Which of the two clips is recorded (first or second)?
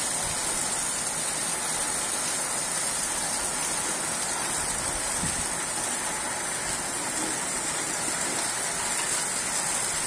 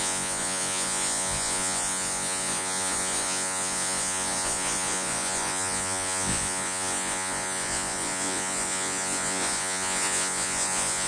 first